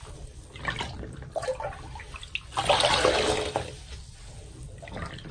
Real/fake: real